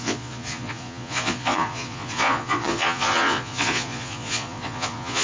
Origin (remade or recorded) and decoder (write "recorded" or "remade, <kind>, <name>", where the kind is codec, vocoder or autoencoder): remade, vocoder, Vocos